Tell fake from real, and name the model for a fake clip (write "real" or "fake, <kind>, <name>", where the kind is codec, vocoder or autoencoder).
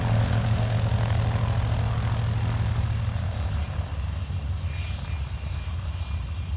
real